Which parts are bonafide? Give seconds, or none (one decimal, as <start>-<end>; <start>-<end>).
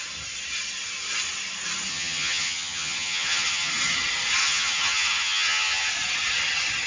0.0-1.9; 3.7-4.4; 5.9-6.9